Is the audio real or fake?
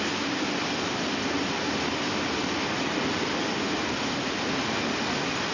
real